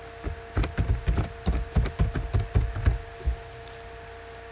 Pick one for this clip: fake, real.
real